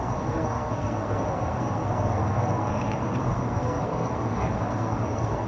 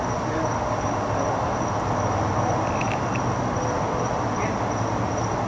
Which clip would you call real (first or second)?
second